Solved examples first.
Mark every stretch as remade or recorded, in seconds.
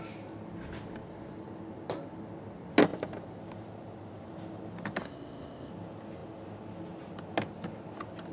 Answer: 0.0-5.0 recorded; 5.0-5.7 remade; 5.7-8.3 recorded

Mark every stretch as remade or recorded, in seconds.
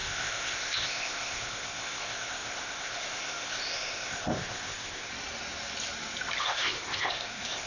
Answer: 0.0-5.1 remade; 5.1-6.4 recorded; 6.4-7.7 remade